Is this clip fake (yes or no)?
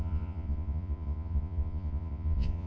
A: yes